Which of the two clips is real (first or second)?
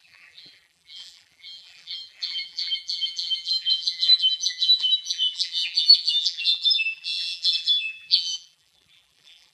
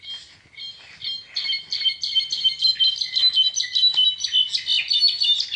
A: second